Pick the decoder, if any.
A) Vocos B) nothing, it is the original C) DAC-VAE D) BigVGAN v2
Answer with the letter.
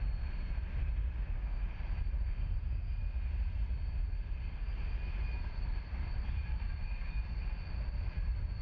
B